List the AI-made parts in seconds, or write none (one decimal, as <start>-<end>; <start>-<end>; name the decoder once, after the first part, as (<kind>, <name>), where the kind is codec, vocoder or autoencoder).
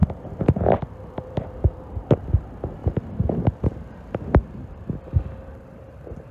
0.0-2.1 (vocoder, BigVGAN v2); 2.8-3.7